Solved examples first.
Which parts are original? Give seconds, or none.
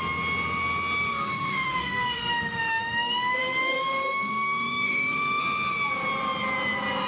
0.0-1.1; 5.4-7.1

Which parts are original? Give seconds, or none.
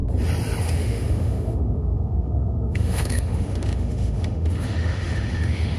0.0-0.6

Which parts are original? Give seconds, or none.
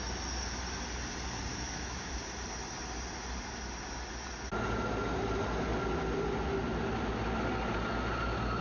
0.0-1.5; 2.1-8.6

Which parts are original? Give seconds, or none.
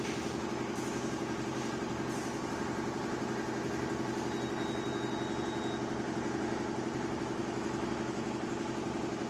0.0-7.4; 8.3-9.3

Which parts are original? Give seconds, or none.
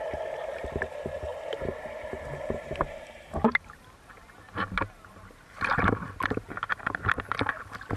0.0-8.0